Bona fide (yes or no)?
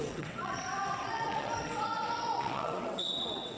no